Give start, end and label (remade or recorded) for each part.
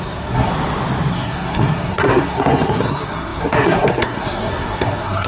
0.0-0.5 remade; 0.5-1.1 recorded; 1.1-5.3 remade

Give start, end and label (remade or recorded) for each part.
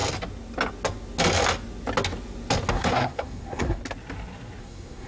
0.0-2.7 recorded; 2.7-3.8 remade; 3.8-4.6 recorded; 4.6-5.1 remade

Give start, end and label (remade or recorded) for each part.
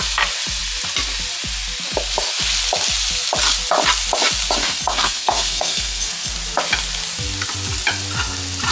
0.0-4.6 recorded; 4.6-6.3 remade; 6.3-8.7 recorded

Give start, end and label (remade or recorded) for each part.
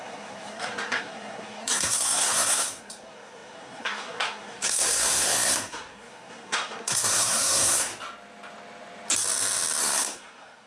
0.0-7.9 remade; 7.9-9.8 recorded; 9.8-10.7 remade